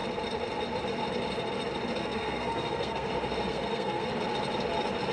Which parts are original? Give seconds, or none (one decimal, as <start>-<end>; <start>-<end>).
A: 0.0-2.0; 3.1-3.5; 4.1-5.1